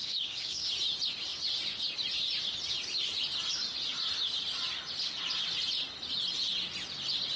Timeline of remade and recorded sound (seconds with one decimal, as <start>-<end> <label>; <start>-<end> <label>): 0.0-0.7 remade; 0.7-7.4 recorded